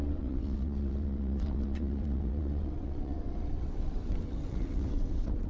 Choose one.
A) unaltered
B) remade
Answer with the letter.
B